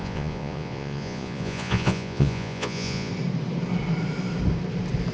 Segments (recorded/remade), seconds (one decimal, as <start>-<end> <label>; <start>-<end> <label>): 0.0-3.1 remade; 3.1-5.1 recorded